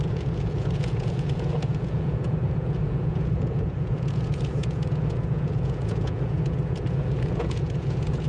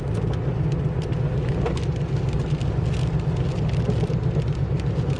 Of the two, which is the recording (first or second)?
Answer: second